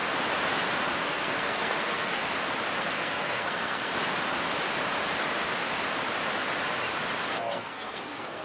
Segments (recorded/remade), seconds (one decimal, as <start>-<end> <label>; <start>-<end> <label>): 0.0-1.0 recorded; 1.0-2.2 remade; 2.2-2.8 recorded; 2.8-3.9 remade; 3.9-7.3 recorded; 7.3-8.4 remade